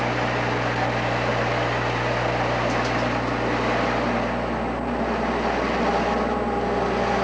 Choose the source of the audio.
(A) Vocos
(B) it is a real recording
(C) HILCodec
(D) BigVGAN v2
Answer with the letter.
B